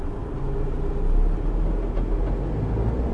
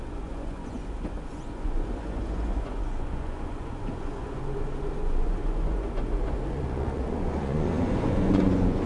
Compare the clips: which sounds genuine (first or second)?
first